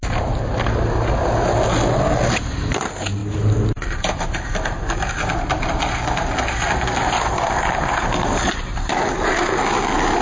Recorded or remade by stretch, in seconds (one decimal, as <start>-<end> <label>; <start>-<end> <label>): 0.0-10.2 recorded